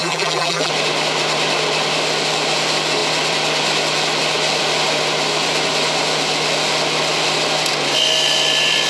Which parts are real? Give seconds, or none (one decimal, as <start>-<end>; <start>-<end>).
0.7-8.9